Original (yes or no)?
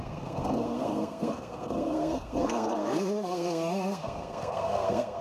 no